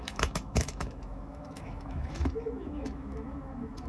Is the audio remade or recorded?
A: remade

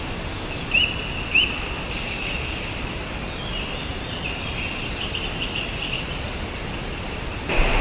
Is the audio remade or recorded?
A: recorded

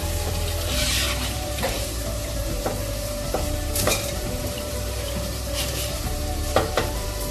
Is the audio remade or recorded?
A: remade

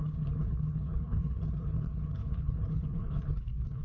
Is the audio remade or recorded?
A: remade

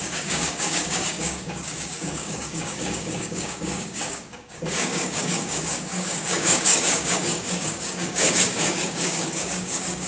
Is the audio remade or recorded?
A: remade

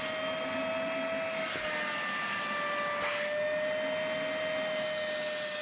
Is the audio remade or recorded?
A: recorded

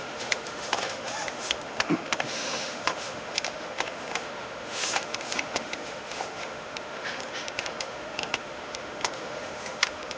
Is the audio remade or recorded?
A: remade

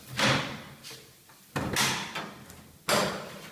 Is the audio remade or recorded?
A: recorded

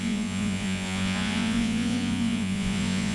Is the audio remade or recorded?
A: remade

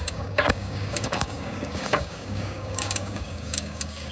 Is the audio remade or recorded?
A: remade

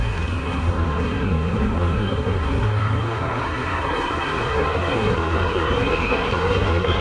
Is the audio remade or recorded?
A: remade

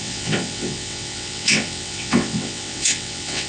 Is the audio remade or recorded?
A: remade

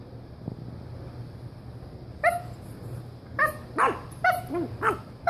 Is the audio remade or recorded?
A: recorded